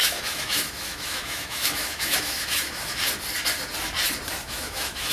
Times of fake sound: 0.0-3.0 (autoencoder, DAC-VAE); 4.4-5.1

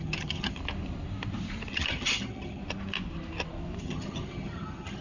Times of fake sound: 0.0-0.6 (vocoder, HiFi-GAN); 1.7-2.6; 3.8-5.0